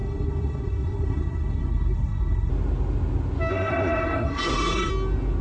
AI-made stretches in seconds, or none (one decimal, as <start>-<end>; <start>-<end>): 0.0-2.5; 3.5-4.9

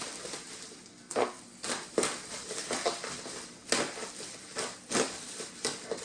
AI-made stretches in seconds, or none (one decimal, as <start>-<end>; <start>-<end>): 0.9-1.4

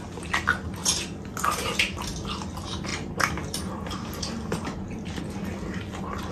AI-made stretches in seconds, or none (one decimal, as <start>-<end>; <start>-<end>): none

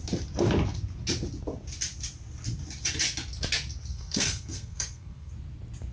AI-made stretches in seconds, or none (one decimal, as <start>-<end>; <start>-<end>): 3.9-5.3

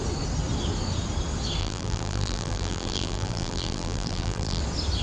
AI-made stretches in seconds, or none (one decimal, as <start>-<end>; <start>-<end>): 1.6-4.6